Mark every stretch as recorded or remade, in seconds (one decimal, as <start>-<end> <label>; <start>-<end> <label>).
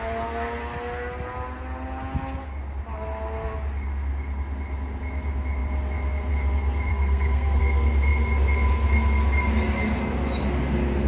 0.0-6.9 recorded; 6.9-7.6 remade; 7.6-11.1 recorded